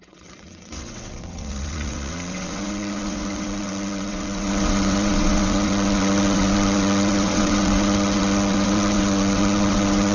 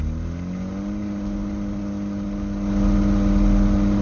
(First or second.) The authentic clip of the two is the second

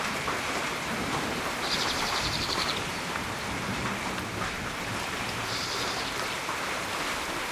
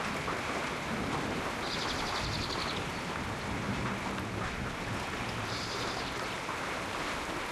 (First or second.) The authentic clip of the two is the second